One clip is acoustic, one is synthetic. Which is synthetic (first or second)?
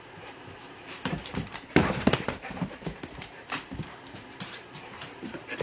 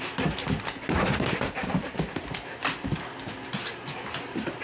first